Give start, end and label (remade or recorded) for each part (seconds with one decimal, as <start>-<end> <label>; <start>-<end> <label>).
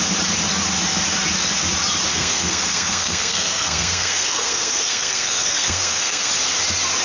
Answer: 0.0-2.1 recorded; 2.1-6.3 remade; 6.3-7.0 recorded